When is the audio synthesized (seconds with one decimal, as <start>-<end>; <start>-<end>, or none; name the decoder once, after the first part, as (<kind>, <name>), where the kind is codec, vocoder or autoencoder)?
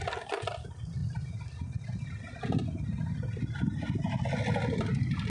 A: none